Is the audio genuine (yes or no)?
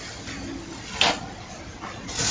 yes